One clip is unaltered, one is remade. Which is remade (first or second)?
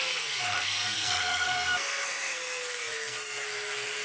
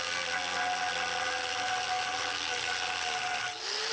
first